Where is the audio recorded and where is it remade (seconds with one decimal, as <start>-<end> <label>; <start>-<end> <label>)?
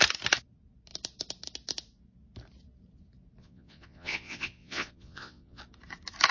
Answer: 0.0-3.4 recorded; 3.4-5.6 remade; 5.6-6.3 recorded